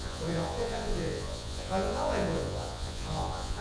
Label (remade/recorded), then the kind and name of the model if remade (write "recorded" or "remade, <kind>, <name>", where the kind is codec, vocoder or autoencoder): remade, vocoder, Vocos